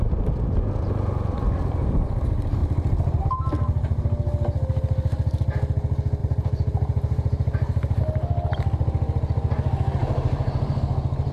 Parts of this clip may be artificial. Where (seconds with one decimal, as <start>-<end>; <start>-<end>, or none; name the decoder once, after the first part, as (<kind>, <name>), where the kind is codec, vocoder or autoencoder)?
6.2-8.0 (vocoder, BigVGAN v2); 10.0-10.8